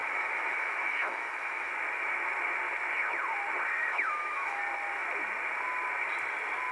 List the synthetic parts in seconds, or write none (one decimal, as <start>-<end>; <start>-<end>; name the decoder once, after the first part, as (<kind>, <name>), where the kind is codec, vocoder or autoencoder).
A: 0.0-1.7 (autoencoder, DAC-VAE); 3.8-4.6